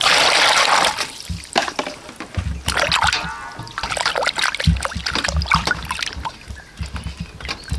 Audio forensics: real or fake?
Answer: real